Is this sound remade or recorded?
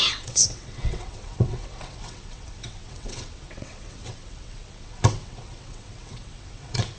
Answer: remade